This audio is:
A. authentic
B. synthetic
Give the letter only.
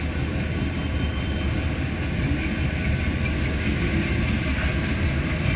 A